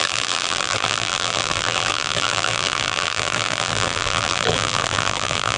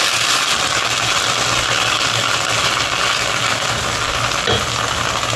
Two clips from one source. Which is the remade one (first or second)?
first